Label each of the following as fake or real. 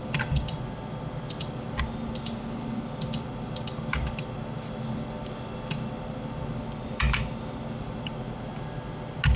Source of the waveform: real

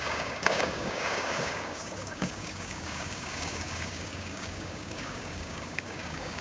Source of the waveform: fake